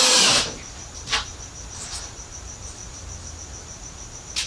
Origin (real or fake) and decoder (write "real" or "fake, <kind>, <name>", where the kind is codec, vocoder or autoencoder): fake, vocoder, BigVGAN v2